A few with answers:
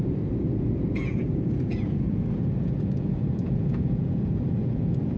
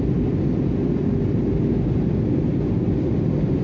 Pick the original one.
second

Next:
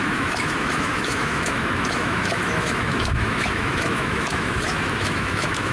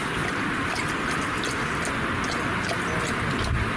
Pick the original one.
second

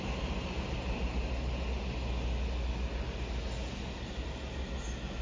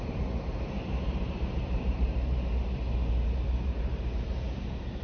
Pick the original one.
first